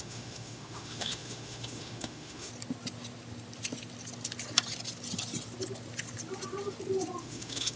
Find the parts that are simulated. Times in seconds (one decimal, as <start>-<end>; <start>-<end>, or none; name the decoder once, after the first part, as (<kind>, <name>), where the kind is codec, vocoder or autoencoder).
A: 0.0-2.5 (autoencoder, DAC-VAE); 7.2-7.8